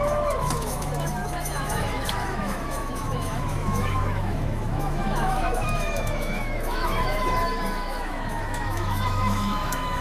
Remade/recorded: remade